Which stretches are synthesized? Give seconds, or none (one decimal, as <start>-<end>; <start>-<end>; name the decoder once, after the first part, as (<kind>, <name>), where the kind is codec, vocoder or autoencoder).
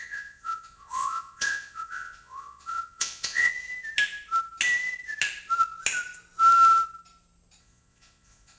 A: 0.0-3.5 (vocoder, Vocos); 7.6-8.6